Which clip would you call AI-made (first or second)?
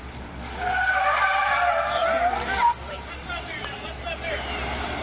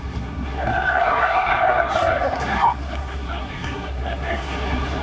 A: second